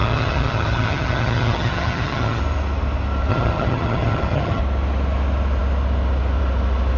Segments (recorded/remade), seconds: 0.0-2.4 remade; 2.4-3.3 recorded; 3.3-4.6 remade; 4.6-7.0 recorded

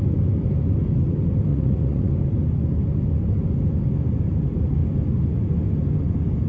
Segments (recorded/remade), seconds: 0.0-1.5 recorded; 1.5-2.1 remade; 2.1-6.5 recorded

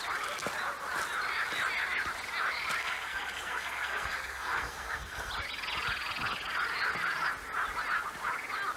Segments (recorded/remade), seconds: 0.0-2.8 recorded; 2.8-5.3 remade; 5.3-8.8 recorded

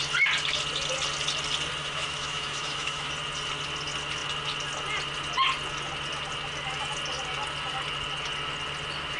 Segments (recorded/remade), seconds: 0.0-1.8 recorded; 1.8-3.1 remade; 3.1-9.2 recorded

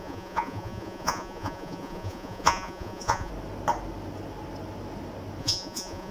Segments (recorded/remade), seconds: 0.0-3.3 remade; 3.3-5.4 recorded; 5.4-6.1 remade

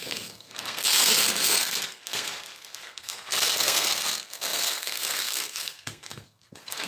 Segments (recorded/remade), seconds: 0.0-6.9 remade